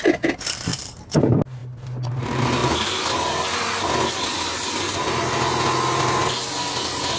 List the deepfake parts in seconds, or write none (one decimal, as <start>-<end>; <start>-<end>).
0.7-1.2